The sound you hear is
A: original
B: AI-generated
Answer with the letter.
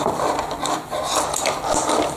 A